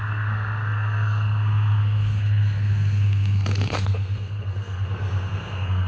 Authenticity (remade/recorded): remade